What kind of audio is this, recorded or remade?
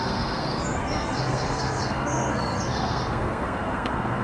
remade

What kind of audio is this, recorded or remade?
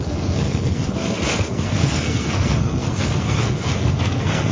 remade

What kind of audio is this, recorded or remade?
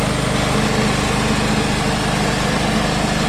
recorded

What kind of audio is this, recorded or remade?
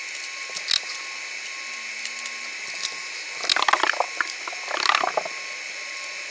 recorded